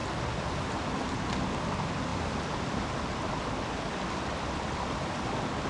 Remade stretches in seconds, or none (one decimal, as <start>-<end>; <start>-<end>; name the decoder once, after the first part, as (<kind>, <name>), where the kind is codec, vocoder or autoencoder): none